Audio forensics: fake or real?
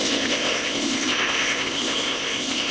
fake